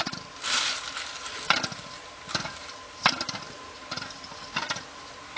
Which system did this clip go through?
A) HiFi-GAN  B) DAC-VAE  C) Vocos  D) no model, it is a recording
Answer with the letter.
D